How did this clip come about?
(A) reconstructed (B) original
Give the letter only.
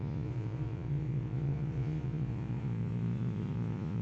A